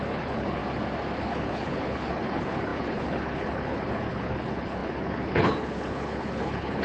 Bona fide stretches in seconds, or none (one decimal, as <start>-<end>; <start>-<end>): 0.6-1.2